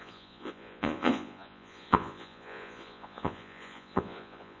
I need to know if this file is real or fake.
fake